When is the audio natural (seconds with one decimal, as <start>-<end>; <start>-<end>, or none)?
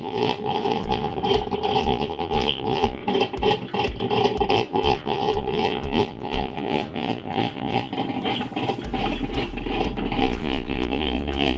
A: 1.2-1.8; 3.0-4.5; 7.9-10.2